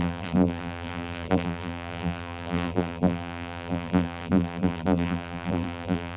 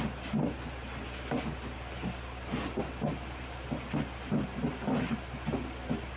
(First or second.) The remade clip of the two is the first